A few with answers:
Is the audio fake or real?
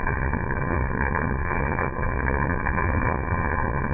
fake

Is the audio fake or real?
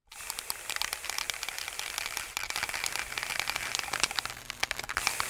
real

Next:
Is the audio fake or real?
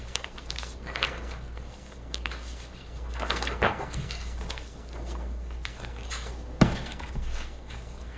fake